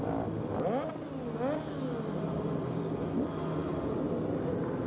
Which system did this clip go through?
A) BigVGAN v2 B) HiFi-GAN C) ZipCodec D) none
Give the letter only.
D